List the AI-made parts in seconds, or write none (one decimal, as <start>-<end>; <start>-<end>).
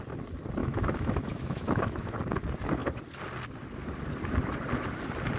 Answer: 0.6-2.2